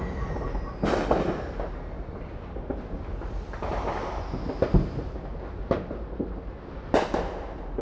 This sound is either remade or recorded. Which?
recorded